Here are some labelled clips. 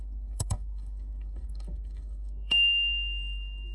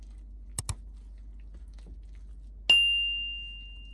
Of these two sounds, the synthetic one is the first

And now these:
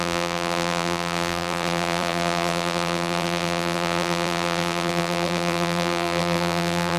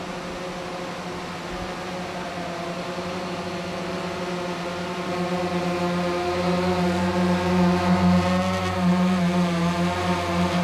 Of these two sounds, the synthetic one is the first